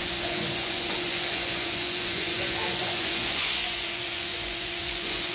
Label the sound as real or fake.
fake